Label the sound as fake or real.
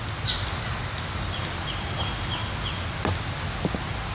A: real